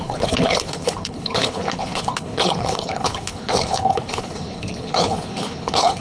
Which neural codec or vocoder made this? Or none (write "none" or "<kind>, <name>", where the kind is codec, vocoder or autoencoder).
codec, HILCodec